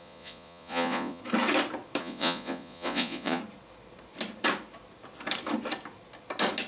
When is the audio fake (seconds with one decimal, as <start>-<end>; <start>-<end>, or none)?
0.0-1.2; 2.0-3.4